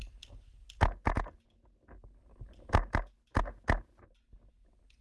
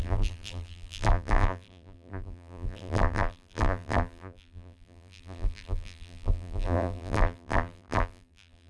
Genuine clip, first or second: first